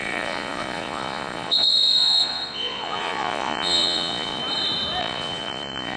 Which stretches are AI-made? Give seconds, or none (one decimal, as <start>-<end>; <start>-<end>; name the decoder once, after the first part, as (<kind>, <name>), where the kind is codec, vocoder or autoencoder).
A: 0.0-4.4 (vocoder, Vocos); 5.0-6.0